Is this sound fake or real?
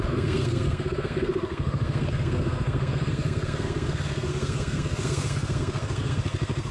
fake